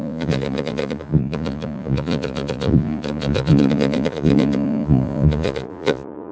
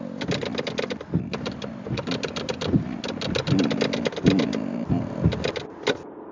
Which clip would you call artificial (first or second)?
first